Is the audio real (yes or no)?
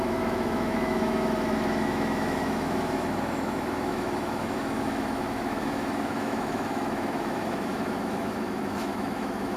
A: no